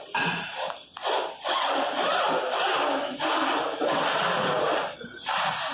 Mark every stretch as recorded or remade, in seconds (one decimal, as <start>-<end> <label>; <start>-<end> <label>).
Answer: 0.0-0.8 remade; 0.8-1.7 recorded; 1.7-2.1 remade; 2.1-3.5 recorded; 3.5-5.7 remade